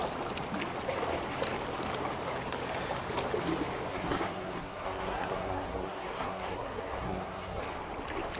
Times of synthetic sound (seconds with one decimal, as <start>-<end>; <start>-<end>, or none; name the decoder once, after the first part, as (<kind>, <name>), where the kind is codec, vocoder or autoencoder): 3.9-7.6 (codec, SNAC)